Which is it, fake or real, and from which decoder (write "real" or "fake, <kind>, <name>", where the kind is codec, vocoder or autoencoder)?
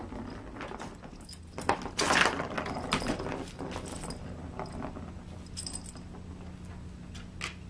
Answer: real